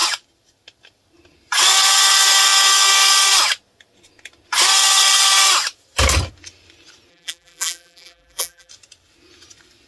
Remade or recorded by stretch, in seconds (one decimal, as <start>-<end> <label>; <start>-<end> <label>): 0.0-7.1 recorded; 7.1-8.7 remade; 8.7-9.9 recorded